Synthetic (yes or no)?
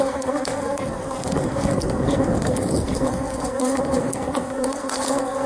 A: yes